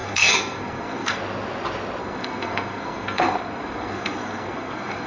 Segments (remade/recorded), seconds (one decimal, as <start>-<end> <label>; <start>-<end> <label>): 0.0-1.2 remade; 1.2-2.0 recorded; 2.0-5.1 remade